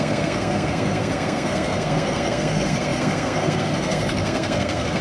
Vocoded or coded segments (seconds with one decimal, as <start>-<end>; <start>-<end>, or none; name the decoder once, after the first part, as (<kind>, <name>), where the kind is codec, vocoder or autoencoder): 0.0-5.0 (codec, SNAC)